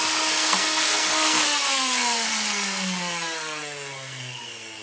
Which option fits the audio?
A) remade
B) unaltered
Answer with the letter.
A